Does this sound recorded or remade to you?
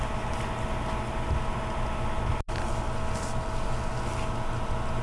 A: recorded